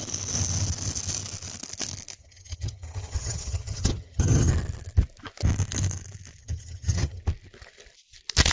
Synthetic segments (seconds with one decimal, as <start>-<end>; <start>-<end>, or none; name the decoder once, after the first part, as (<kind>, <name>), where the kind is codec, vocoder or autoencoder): 2.2-4.5 (vocoder, HiFi-GAN); 6.4-7.2